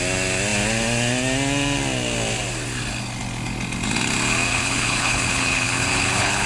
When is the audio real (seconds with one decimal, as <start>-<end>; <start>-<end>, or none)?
0.0-4.5